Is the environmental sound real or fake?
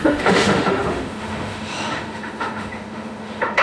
fake